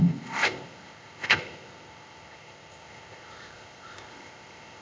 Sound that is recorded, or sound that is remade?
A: remade